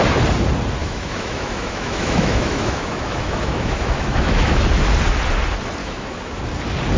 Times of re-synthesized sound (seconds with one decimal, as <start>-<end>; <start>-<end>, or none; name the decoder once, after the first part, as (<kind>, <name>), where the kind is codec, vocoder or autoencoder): 0.8-4.6 (autoencoder, DAC-VAE); 5.8-6.4